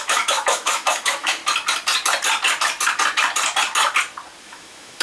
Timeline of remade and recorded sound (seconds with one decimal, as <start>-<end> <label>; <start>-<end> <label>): 0.0-1.4 remade; 1.4-4.4 recorded; 4.4-5.0 remade